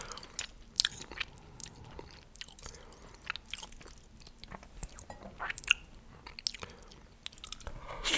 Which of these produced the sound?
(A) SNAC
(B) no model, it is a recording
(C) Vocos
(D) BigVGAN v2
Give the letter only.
B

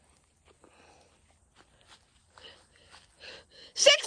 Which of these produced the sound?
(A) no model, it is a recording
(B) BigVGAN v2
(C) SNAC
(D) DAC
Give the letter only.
A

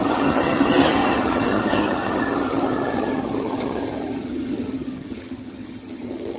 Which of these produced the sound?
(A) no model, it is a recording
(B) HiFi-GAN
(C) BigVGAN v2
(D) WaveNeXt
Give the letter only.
B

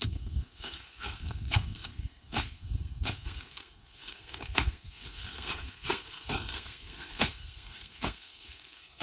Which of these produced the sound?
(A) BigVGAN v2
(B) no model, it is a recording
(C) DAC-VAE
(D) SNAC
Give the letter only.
D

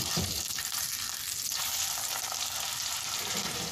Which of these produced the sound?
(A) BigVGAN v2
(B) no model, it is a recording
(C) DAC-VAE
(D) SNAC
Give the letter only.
A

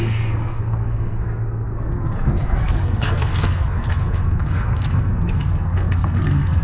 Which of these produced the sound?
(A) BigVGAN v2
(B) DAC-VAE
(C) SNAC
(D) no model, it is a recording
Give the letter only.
C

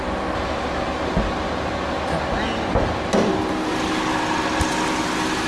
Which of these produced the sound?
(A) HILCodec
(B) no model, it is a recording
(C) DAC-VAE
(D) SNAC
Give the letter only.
B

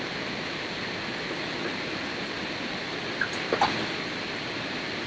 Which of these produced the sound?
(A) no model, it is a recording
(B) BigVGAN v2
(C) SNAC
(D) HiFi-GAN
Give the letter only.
A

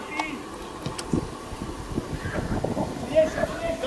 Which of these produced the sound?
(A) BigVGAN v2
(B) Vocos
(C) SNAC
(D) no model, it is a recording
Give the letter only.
D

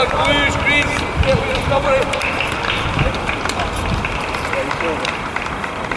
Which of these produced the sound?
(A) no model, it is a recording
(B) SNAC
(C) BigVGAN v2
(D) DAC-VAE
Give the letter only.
A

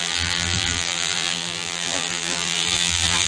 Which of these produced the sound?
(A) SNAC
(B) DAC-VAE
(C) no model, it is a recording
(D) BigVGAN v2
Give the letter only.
D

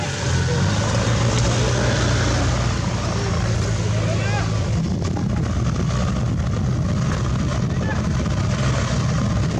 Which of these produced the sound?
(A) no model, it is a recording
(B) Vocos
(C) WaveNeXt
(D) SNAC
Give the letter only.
A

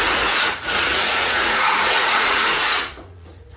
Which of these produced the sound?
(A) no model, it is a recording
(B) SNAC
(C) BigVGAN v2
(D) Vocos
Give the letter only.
D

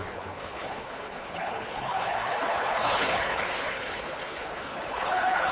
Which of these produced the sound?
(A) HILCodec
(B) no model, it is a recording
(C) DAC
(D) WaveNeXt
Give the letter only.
A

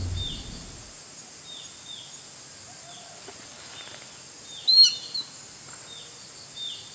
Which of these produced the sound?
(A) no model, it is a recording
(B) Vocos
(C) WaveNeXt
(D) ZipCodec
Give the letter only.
A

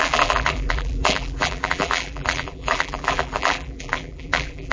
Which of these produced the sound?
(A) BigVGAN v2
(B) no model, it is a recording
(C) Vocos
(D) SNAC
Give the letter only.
A